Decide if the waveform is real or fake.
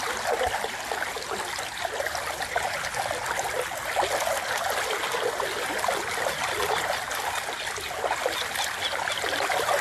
real